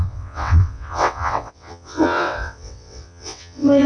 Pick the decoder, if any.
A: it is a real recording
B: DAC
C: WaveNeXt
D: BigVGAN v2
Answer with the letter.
C